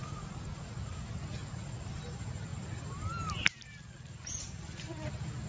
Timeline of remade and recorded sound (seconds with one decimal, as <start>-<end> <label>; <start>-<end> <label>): 0.0-1.0 remade; 1.0-1.4 recorded; 1.4-1.9 remade; 1.9-5.5 recorded